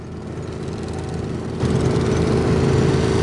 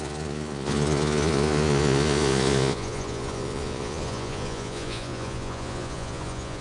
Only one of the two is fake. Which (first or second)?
second